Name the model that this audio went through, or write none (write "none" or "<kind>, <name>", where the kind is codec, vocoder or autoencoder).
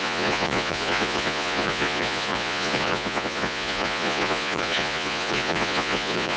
vocoder, Vocos